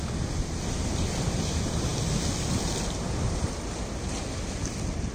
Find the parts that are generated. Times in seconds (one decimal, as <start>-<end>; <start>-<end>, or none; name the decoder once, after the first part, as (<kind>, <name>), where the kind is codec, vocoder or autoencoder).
none